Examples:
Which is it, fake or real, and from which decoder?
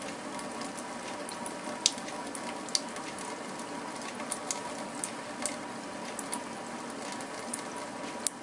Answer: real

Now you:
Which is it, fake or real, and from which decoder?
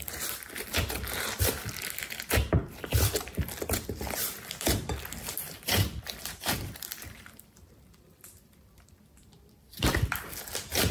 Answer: fake, vocoder, BigVGAN v2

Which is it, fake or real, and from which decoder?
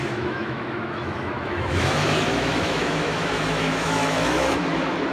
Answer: fake, autoencoder, DAC-VAE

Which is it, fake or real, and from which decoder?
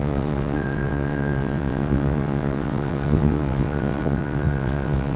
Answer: fake, vocoder, WaveNeXt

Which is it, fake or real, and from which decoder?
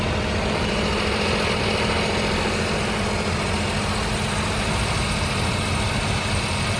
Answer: real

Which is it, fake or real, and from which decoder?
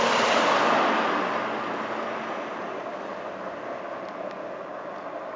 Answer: real